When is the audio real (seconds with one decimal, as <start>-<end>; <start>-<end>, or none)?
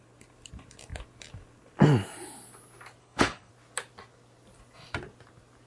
0.0-3.0; 3.5-5.7